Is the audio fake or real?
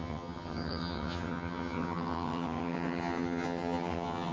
fake